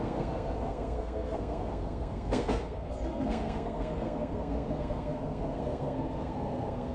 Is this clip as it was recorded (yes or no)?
no